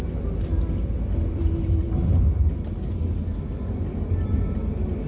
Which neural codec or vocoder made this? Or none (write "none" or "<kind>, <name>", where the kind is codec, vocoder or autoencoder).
none